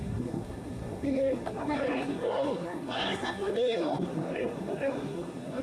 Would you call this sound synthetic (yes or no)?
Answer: yes